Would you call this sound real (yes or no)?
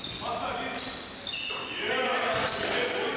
yes